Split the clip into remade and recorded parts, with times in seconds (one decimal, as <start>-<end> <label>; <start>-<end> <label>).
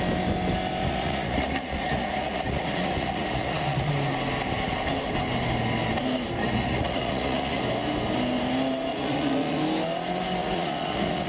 0.0-0.8 recorded; 0.8-3.9 remade; 3.9-6.4 recorded; 6.4-7.6 remade; 7.6-8.9 recorded; 8.9-9.6 remade; 9.6-10.4 recorded; 10.4-11.3 remade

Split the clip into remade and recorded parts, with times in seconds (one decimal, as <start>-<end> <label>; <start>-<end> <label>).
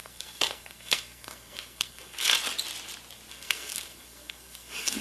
0.0-2.3 remade; 2.3-3.3 recorded; 3.3-5.0 remade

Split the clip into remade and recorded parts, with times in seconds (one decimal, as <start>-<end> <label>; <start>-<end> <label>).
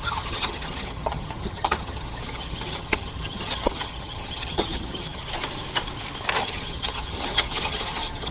0.0-5.2 remade; 5.2-6.4 recorded; 6.4-8.3 remade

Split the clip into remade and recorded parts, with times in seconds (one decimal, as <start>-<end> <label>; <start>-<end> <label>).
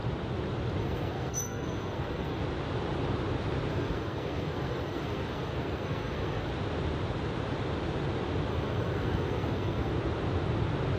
0.0-0.8 recorded; 0.8-2.4 remade; 2.4-3.7 recorded; 3.7-6.5 remade; 6.5-8.5 recorded; 8.5-9.9 remade; 9.9-11.0 recorded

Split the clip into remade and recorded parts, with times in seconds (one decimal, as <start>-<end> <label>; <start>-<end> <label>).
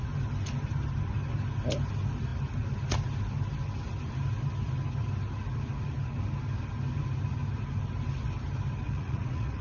0.0-8.8 recorded; 8.8-9.6 remade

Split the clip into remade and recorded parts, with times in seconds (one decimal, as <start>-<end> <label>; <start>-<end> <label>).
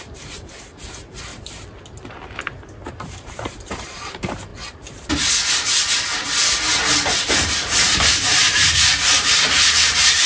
0.0-1.3 remade; 1.3-2.9 recorded; 2.9-4.5 remade; 4.5-7.3 recorded; 7.3-10.3 remade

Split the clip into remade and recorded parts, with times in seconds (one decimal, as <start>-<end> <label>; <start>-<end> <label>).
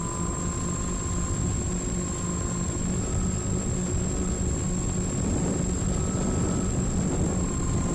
0.0-7.9 recorded